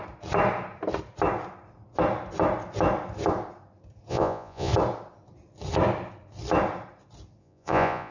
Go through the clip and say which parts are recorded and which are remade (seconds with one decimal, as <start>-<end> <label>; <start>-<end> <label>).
0.0-4.1 recorded; 4.1-4.7 remade; 4.7-7.4 recorded; 7.4-8.1 remade